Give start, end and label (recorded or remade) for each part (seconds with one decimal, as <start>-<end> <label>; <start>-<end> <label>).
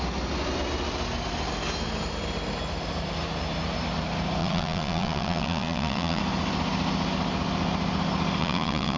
0.0-4.4 recorded; 4.4-6.2 remade; 6.2-8.4 recorded; 8.4-9.0 remade